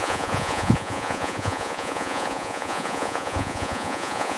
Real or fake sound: fake